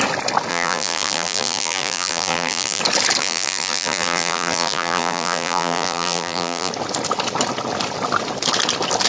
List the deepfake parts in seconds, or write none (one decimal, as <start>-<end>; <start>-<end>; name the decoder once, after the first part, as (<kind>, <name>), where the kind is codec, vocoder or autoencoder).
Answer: 0.5-2.8 (vocoder, BigVGAN v2); 3.2-6.7